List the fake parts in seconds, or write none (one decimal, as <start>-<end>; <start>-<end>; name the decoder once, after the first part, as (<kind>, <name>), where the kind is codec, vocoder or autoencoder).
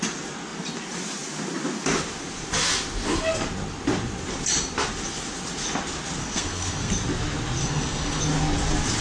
6.2-6.9 (codec, SNAC); 7.6-8.2